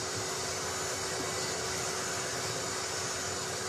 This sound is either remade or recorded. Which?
recorded